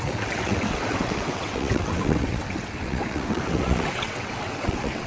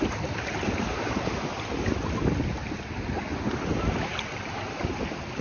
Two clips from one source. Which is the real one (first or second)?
second